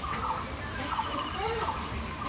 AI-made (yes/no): no